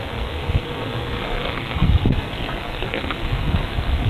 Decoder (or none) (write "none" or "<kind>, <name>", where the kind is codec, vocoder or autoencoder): codec, SNAC